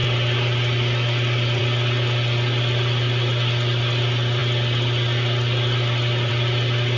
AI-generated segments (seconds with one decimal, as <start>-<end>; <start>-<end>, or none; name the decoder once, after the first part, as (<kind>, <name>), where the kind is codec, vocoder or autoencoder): none